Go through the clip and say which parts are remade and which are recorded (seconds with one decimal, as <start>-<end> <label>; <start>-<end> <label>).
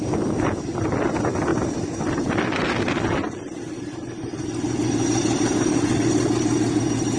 0.0-7.2 recorded